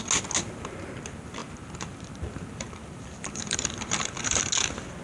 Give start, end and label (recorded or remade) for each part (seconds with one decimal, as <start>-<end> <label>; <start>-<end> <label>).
0.0-1.4 recorded; 1.4-4.4 remade; 4.4-5.0 recorded